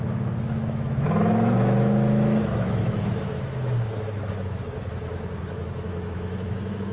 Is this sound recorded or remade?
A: remade